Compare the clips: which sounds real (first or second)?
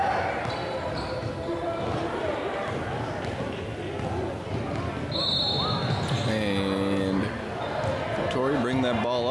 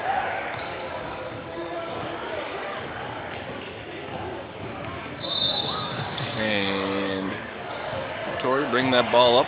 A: first